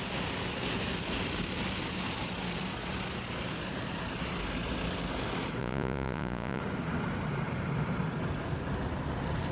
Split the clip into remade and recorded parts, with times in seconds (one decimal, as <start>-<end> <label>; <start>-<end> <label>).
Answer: 0.0-5.6 recorded; 5.6-6.6 remade; 6.6-9.5 recorded